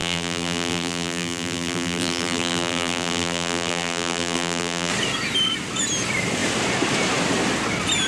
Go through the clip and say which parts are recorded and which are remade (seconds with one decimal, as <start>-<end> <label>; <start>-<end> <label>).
0.0-4.9 remade; 4.9-8.1 recorded